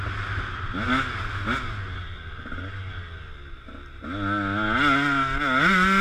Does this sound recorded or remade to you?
recorded